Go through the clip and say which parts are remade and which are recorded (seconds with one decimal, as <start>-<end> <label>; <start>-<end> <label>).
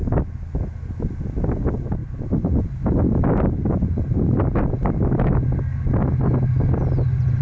0.0-7.4 recorded